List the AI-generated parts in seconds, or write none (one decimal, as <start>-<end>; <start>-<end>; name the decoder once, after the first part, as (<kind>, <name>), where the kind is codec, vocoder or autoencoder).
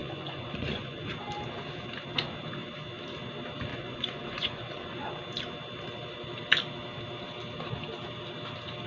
0.0-1.0 (vocoder, Vocos); 3.7-5.1